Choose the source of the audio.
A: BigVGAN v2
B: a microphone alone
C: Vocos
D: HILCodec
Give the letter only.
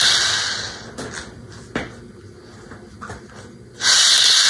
B